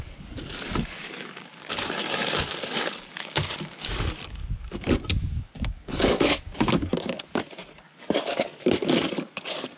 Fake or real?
fake